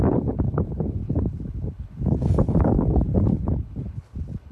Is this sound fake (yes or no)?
yes